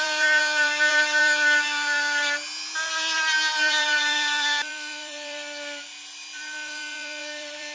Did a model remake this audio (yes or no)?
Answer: yes